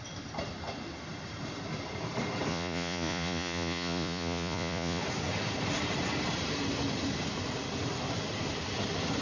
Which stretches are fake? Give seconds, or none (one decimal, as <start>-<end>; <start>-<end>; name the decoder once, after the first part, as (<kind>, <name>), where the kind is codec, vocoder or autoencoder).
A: 2.5-5.0 (vocoder, Vocos)